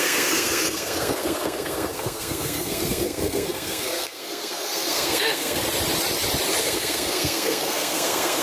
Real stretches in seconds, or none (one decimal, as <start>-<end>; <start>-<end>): 5.6-6.6